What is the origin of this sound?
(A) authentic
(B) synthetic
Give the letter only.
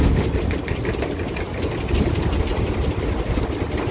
A